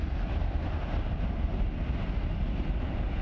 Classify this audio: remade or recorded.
recorded